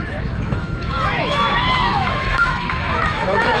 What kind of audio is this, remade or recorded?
remade